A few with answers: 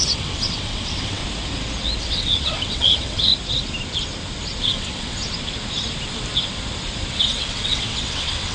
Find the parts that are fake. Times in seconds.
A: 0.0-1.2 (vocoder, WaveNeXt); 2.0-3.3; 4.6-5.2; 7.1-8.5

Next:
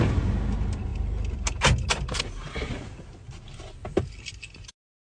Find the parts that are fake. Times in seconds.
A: none

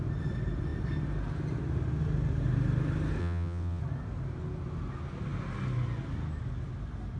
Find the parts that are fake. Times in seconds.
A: 3.2-3.8 (vocoder, WaveNeXt)

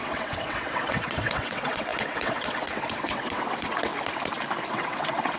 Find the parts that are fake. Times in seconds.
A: 0.0-3.9 (vocoder, WaveNeXt); 4.7-5.4